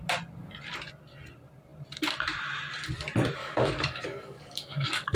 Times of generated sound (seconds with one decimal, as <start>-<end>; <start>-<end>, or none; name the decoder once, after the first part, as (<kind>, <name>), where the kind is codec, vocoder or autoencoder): 3.4-5.2 (codec, DAC)